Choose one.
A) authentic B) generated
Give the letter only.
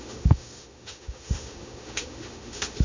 B